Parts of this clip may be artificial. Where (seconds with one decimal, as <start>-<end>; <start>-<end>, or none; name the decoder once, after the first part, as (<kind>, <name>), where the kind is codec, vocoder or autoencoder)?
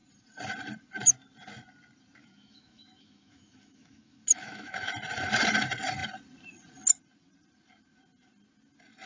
2.2-4.9 (autoencoder, DAC-VAE)